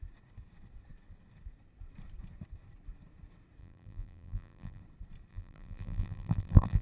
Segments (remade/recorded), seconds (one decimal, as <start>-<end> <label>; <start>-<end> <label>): 0.0-3.6 recorded; 3.6-4.8 remade; 4.8-5.3 recorded; 5.3-6.8 remade